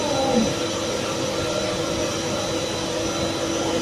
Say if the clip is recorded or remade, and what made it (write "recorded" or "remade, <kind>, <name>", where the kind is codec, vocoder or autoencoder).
recorded